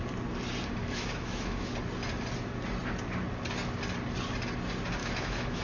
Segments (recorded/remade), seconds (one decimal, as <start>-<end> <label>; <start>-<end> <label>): 0.0-0.8 recorded; 0.8-1.7 remade; 1.7-5.0 recorded; 5.0-5.6 remade